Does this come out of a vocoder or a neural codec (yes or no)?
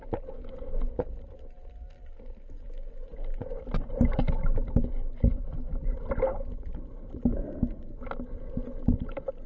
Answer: no